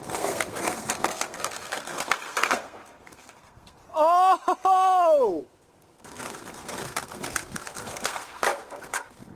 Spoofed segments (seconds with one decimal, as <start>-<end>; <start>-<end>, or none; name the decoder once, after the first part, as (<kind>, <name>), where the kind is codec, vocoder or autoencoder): 0.0-3.8 (codec, SNAC); 5.4-9.4